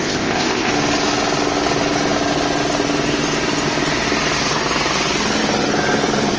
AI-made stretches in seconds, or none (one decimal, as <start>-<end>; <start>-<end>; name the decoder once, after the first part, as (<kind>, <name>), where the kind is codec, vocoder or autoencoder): 0.0-0.7 (codec, ZipCodec)